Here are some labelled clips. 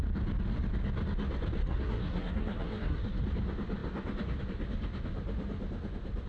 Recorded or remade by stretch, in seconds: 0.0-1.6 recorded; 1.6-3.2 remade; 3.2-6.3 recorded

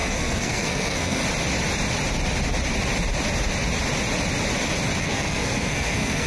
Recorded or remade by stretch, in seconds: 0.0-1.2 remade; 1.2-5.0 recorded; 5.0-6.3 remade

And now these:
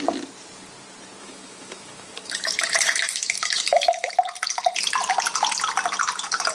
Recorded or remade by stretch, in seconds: 0.0-1.2 recorded; 1.2-4.1 remade; 4.1-6.5 recorded

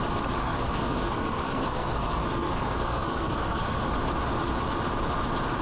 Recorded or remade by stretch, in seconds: 0.0-0.4 recorded; 0.4-3.8 remade; 3.8-5.6 recorded

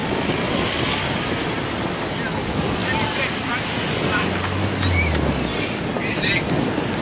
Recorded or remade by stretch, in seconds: 0.0-7.0 recorded

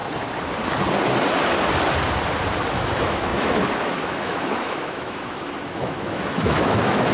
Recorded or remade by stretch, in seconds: 0.0-2.7 recorded; 2.7-7.1 remade